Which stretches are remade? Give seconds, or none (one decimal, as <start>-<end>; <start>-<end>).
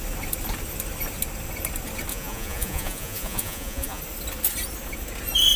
2.1-4.0